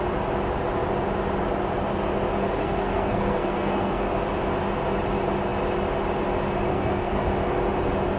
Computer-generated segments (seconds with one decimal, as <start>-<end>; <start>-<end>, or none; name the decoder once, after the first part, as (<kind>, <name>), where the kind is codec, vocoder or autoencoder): 2.6-4.1 (codec, SNAC); 6.7-7.2

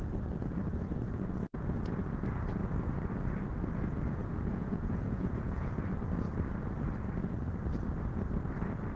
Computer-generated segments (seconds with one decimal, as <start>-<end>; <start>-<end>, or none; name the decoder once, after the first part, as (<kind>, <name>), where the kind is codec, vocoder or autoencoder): 4.2-5.8 (vocoder, Vocos)

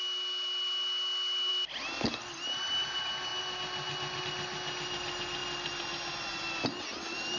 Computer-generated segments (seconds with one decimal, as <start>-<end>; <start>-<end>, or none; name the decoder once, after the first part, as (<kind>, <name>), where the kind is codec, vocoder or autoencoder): none

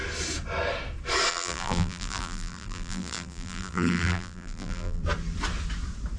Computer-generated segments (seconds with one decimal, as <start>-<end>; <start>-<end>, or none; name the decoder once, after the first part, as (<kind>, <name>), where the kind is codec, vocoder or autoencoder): 1.3-5.0 (vocoder, BigVGAN v2)

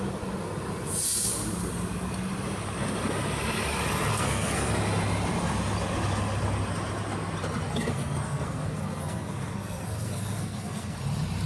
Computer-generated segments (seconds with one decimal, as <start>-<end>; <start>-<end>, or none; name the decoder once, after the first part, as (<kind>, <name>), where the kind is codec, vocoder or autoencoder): 4.1-4.7 (codec, SNAC); 7.7-11.0